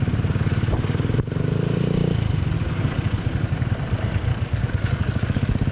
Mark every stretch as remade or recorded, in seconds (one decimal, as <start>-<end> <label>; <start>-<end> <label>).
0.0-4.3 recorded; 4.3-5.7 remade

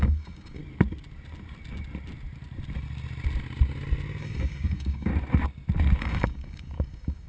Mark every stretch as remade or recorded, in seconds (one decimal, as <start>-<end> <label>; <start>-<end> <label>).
0.0-0.6 remade; 0.6-4.2 recorded; 4.2-5.1 remade; 5.1-6.0 recorded; 6.0-7.3 remade

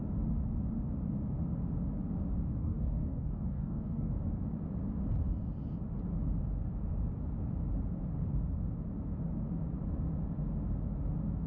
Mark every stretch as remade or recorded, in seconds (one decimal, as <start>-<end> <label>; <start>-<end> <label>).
0.0-2.6 recorded; 2.6-4.1 remade; 4.1-11.5 recorded

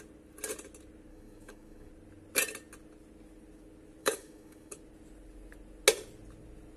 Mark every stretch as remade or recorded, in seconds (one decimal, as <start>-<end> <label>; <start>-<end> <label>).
0.0-1.1 recorded; 1.1-1.9 remade; 1.9-4.0 recorded; 4.0-4.8 remade; 4.8-6.8 recorded